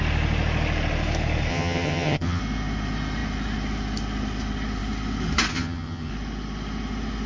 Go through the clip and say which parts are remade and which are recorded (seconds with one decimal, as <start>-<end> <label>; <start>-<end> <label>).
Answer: 0.0-1.5 recorded; 1.5-2.4 remade; 2.4-5.5 recorded; 5.5-6.1 remade; 6.1-7.3 recorded